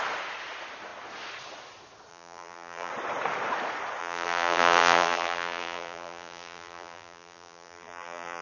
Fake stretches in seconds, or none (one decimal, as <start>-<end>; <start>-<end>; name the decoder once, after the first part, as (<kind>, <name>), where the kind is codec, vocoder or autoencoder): 2.1-2.9 (vocoder, BigVGAN v2); 4.0-8.4

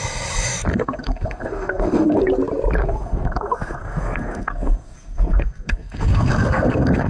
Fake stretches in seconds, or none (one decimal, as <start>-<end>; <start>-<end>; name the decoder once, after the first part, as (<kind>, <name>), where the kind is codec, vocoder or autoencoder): 0.7-2.2 (codec, SNAC); 2.8-7.1

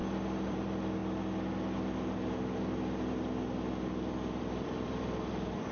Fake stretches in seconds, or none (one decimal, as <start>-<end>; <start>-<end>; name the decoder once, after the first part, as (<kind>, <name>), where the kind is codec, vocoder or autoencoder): 0.5-1.0 (vocoder, BigVGAN v2); 4.4-5.7

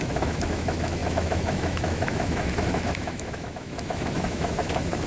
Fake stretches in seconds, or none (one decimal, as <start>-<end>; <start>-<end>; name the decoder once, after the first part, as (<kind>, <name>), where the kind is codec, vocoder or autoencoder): 0.0-5.1 (autoencoder, DAC-VAE)

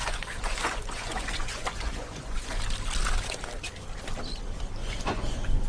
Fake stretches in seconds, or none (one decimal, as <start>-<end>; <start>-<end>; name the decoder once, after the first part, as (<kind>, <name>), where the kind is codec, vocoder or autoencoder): 0.0-2.6 (vocoder, Vocos); 4.8-5.7

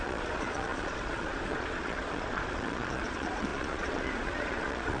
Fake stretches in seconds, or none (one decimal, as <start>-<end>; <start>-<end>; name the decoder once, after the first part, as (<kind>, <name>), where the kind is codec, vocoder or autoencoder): 0.0-5.0 (vocoder, Vocos)